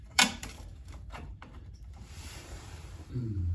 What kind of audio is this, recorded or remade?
remade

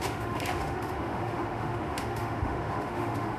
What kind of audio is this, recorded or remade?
remade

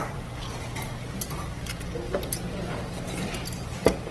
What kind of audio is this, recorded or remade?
recorded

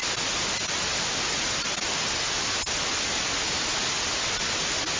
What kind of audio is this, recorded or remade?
recorded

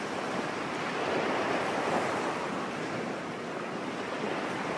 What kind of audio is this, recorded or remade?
recorded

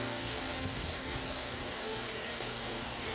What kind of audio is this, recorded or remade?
remade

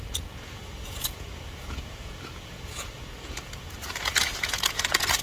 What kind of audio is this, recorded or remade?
remade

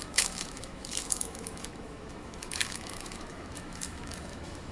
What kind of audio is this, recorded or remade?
remade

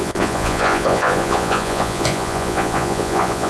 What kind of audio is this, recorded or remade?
remade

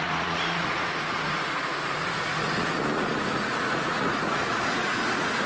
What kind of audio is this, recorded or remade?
remade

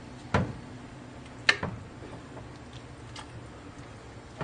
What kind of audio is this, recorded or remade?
recorded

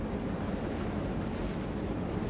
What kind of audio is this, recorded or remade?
recorded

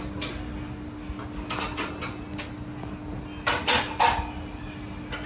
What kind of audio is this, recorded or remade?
recorded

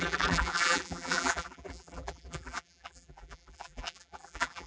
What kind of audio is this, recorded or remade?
remade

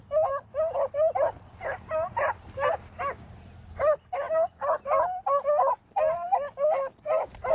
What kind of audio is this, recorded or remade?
recorded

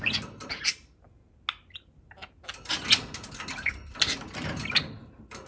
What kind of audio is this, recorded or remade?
recorded